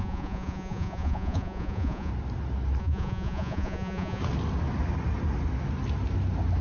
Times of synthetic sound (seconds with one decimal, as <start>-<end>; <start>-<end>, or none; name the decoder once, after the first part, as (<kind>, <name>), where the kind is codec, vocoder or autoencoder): 0.0-2.1 (vocoder, Vocos); 2.8-4.2